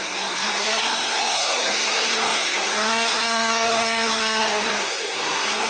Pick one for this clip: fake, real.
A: fake